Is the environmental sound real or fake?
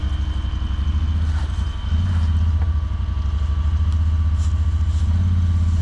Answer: real